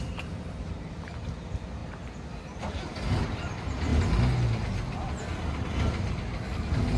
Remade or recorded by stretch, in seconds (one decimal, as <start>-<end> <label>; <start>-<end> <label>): 0.0-7.0 recorded